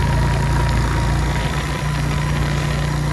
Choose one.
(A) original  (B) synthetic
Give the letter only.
A